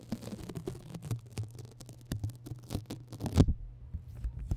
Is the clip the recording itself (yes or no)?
yes